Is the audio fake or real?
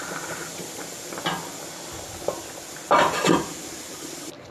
real